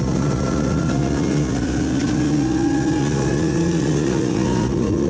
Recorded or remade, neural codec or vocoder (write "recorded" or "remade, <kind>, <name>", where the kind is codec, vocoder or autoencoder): remade, vocoder, Vocos